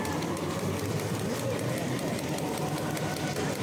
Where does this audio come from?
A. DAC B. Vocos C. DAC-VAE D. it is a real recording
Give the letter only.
D